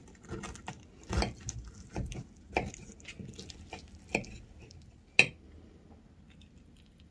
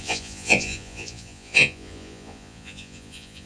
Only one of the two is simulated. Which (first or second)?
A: second